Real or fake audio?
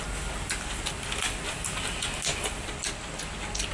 real